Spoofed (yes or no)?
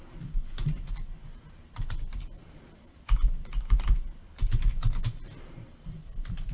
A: no